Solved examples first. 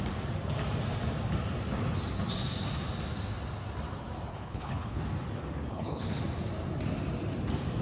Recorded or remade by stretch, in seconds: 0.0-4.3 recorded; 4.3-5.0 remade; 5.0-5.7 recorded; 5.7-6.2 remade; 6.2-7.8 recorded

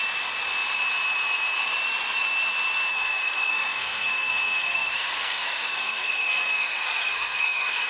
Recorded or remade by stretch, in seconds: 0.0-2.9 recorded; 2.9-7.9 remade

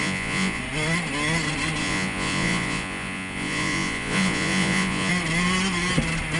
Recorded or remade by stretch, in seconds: 0.0-0.6 remade; 0.6-1.8 recorded; 1.8-5.1 remade; 5.1-6.4 recorded

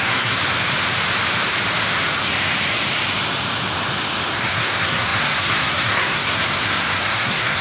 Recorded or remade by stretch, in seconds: 0.0-0.4 remade; 0.4-4.5 recorded; 4.5-7.6 remade

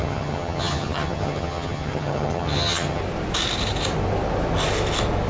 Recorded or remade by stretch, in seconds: 0.0-3.0 remade; 3.0-5.3 recorded

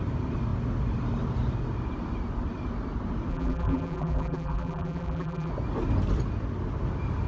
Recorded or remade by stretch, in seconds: 0.0-3.3 recorded; 3.3-5.5 remade; 5.5-7.3 recorded

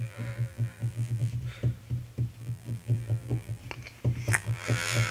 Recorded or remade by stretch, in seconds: 0.0-1.3 remade; 1.3-2.4 recorded; 2.4-3.6 remade; 3.6-4.3 recorded; 4.3-5.1 remade

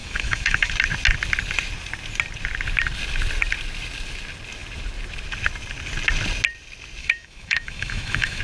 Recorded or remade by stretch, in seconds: 0.0-0.7 remade; 0.7-7.0 recorded; 7.0-8.4 remade